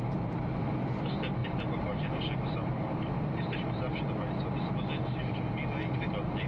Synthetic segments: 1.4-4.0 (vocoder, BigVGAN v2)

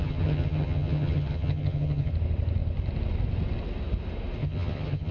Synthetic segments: 0.0-2.1 (vocoder, HiFi-GAN); 4.4-5.1